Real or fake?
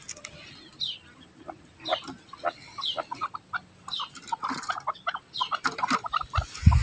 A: real